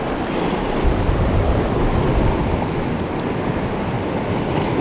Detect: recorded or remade recorded